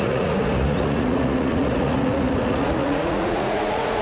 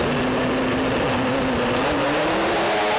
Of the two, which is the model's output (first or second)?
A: first